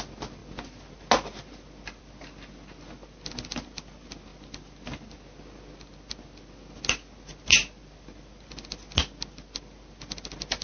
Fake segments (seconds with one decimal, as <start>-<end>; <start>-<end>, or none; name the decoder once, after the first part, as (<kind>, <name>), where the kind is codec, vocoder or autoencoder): none

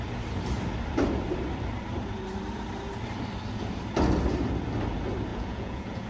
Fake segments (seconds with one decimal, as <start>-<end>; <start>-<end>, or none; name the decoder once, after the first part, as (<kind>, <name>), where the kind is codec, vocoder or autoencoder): 5.3-6.1 (vocoder, Vocos)

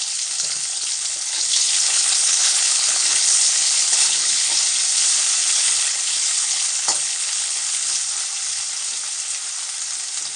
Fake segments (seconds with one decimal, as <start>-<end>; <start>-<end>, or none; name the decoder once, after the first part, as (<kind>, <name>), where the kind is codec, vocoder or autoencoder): 0.0-4.5 (codec, HILCodec); 5.5-8.0

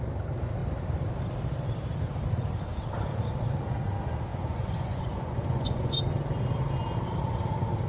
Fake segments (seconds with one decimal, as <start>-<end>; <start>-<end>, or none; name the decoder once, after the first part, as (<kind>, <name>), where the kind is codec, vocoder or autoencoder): 4.3-6.0 (vocoder, Vocos)

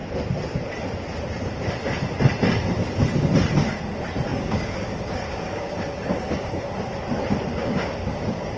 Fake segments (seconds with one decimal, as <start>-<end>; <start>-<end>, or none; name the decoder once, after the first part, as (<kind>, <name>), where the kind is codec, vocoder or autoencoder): 4.3-6.5 (codec, DAC); 7.5-8.6